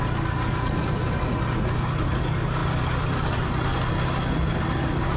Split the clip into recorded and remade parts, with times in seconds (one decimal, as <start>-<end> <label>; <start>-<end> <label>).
0.0-5.2 recorded